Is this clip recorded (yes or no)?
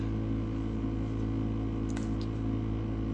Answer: yes